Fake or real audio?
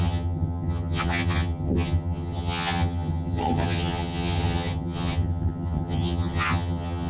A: fake